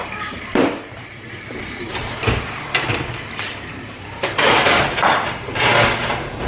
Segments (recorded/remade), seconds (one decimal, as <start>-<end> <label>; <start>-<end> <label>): 0.0-1.9 remade; 1.9-3.7 recorded; 3.7-5.7 remade; 5.7-6.5 recorded